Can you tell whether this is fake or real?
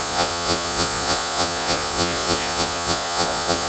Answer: fake